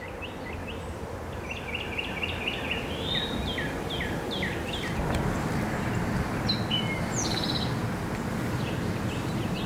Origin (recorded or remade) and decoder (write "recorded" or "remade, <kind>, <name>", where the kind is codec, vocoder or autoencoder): recorded